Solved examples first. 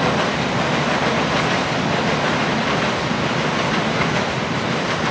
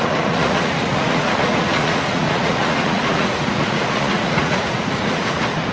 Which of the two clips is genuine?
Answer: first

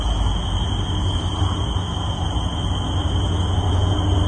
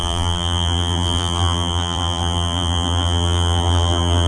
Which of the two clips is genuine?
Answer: first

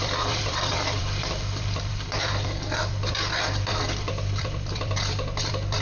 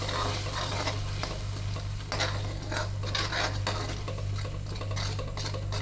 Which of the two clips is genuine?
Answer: second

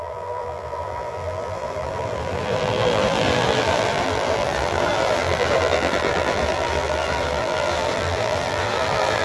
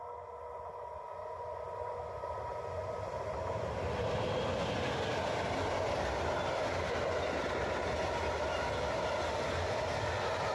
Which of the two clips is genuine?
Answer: second